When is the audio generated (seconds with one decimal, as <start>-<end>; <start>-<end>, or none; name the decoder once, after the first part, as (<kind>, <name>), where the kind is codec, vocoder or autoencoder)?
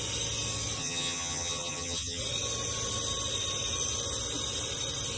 0.8-2.2 (vocoder, HiFi-GAN)